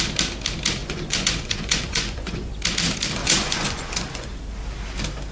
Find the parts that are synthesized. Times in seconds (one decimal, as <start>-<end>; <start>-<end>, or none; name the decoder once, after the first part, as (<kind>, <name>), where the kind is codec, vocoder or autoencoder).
0.8-2.5 (vocoder, Vocos); 3.2-4.4